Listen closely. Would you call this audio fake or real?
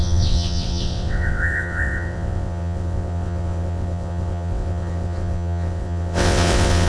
fake